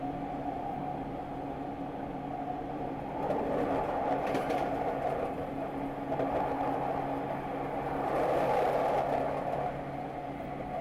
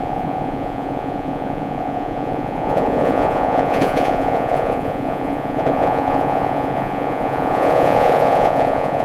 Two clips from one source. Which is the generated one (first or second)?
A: second